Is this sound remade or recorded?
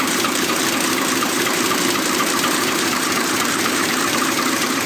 remade